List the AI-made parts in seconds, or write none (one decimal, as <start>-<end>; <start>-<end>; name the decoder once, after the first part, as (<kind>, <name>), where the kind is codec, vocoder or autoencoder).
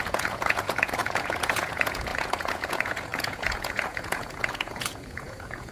0.0-5.7 (vocoder, Vocos)